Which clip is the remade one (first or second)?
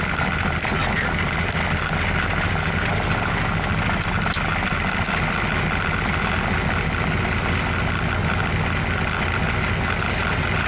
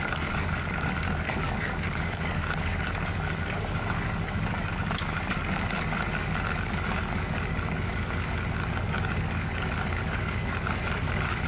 second